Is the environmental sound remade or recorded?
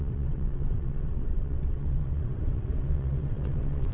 remade